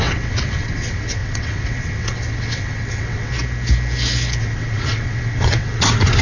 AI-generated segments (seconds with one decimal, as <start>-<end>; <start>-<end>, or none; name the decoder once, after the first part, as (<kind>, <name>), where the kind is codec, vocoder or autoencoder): 0.0-3.3 (vocoder, WaveNeXt); 4.4-6.2